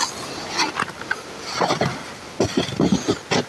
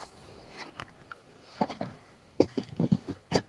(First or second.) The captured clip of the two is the first